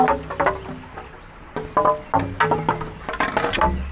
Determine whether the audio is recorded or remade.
recorded